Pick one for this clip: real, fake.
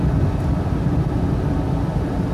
real